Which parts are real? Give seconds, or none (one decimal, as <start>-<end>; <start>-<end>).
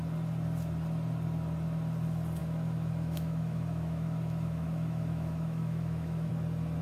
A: 0.0-2.4; 6.3-6.8